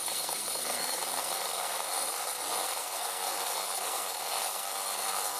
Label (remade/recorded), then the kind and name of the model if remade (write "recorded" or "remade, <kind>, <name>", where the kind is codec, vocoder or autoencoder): remade, codec, SNAC